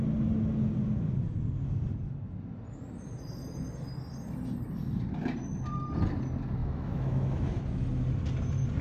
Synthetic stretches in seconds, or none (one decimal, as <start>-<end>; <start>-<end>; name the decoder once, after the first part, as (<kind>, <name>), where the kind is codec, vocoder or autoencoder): 6.6-7.6 (autoencoder, DAC-VAE)